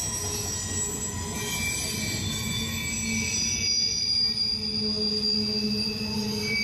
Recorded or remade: recorded